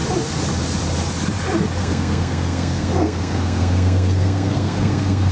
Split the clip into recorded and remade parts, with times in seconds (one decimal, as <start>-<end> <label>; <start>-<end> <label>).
0.0-1.8 recorded; 1.8-5.3 remade